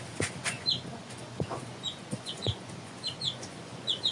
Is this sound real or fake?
fake